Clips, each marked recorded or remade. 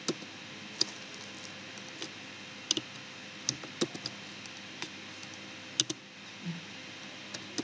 recorded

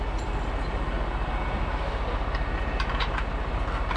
recorded